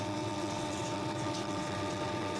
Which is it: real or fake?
fake